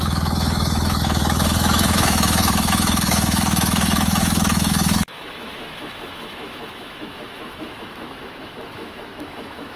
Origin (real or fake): fake